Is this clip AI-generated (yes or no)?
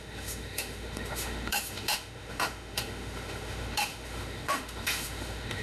yes